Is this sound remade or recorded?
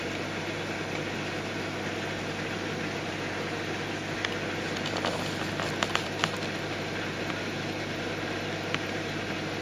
recorded